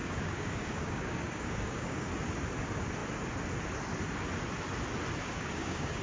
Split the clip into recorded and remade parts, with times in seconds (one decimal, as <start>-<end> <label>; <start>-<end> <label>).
0.0-2.1 remade; 2.1-5.2 recorded; 5.2-6.0 remade